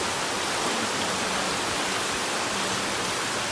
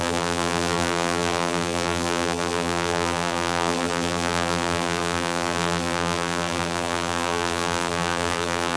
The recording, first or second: first